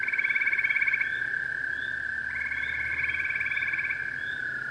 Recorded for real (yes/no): yes